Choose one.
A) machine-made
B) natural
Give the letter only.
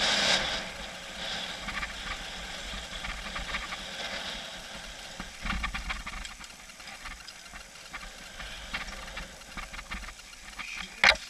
B